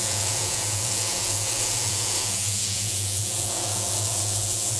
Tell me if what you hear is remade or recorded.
remade